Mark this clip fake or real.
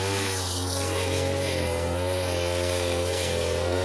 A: fake